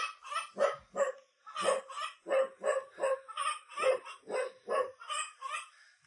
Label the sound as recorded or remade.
recorded